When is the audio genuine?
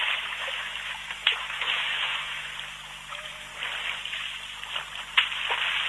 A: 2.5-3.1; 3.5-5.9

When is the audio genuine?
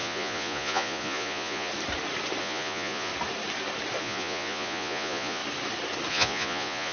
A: 1.7-2.4; 3.1-4.0; 5.4-6.1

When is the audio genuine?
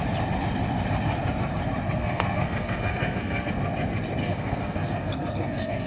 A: 0.0-2.0; 3.5-4.2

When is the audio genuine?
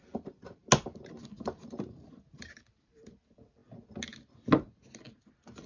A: 0.6-2.2; 3.6-5.7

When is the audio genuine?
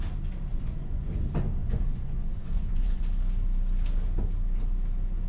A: 0.0-0.5; 1.1-1.6; 3.0-5.3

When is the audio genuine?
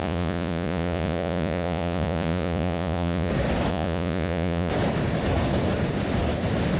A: 3.3-3.7; 4.7-6.8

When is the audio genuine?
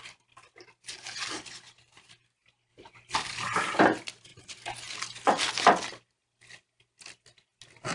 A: 0.0-7.9